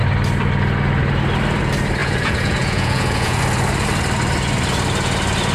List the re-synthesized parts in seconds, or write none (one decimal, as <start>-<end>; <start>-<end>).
2.0-3.4